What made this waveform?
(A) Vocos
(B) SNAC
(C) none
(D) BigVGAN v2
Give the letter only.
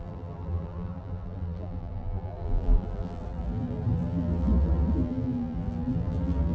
D